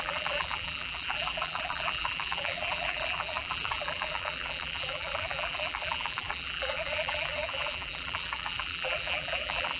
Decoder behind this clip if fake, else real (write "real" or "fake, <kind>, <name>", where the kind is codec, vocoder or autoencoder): fake, vocoder, BigVGAN v2